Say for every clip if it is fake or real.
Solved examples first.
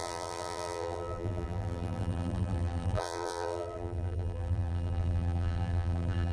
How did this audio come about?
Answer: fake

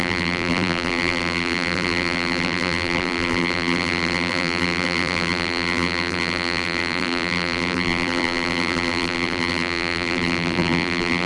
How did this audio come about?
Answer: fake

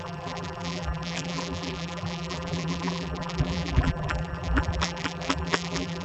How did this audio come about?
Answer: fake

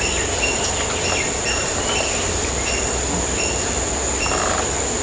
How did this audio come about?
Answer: real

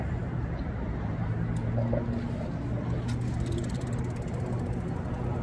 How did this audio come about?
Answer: real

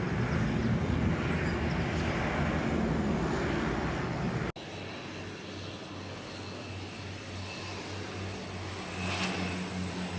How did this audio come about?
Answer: real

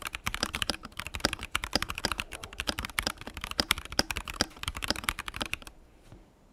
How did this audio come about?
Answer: fake